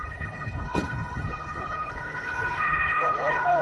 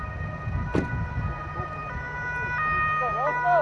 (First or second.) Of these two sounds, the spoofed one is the first